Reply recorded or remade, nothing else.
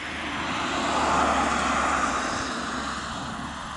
recorded